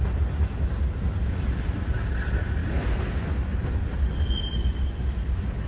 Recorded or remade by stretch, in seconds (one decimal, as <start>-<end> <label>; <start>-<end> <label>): 0.0-5.7 recorded